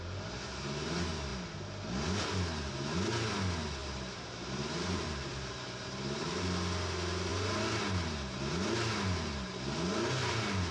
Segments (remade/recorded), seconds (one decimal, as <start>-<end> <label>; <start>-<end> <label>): 0.0-3.8 recorded; 3.8-6.4 remade; 6.4-10.7 recorded

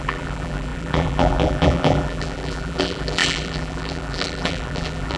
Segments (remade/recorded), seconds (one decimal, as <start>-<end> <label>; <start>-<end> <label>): 0.0-5.2 remade

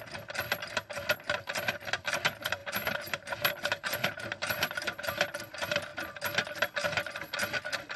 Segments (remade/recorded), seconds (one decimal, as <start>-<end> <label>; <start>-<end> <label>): 0.0-2.6 recorded; 2.6-5.4 remade; 5.4-8.0 recorded

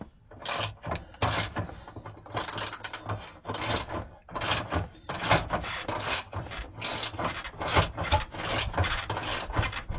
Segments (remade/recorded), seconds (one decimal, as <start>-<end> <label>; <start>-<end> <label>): 0.0-4.3 recorded; 4.3-6.5 remade; 6.5-10.0 recorded

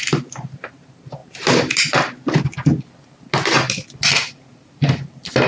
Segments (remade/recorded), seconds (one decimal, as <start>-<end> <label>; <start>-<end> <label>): 0.0-1.2 remade; 1.2-4.5 recorded; 4.5-5.5 remade

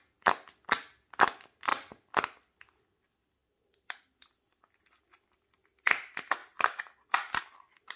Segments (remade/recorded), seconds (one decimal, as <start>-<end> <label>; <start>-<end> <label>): 0.0-3.4 recorded; 3.4-4.6 remade; 4.6-6.4 recorded; 6.4-7.4 remade; 7.4-8.0 recorded

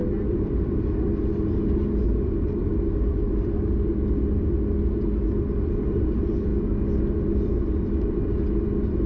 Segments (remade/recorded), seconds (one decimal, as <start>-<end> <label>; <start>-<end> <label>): 0.0-2.0 recorded; 2.0-2.7 remade; 2.7-5.8 recorded; 5.8-6.5 remade; 6.5-9.1 recorded